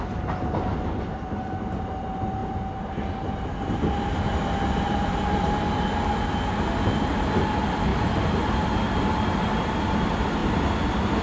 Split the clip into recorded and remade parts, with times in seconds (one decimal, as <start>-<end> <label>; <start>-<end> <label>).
0.0-11.2 recorded